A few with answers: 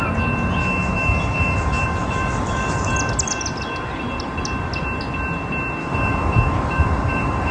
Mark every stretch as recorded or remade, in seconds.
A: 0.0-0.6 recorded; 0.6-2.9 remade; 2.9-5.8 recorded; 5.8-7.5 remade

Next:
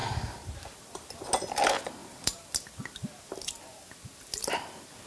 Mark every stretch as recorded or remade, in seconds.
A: 0.0-1.1 remade; 1.1-2.0 recorded; 2.0-2.5 remade; 2.5-5.1 recorded

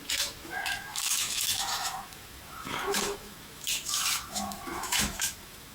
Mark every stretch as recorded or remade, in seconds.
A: 0.0-5.7 remade

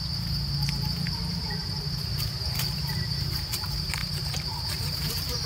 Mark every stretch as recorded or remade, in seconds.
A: 0.0-1.4 recorded; 1.4-5.5 remade

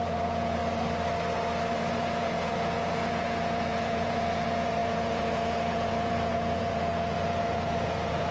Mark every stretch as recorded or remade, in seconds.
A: 0.0-0.6 remade; 0.6-1.8 recorded; 1.8-8.3 remade

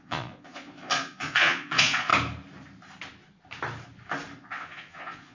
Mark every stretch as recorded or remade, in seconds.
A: 0.0-2.1 remade; 2.1-4.4 recorded; 4.4-5.3 remade

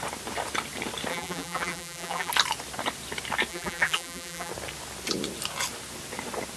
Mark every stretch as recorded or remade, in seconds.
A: 0.0-1.1 recorded; 1.1-2.3 remade; 2.3-3.5 recorded; 3.5-4.5 remade; 4.5-6.6 recorded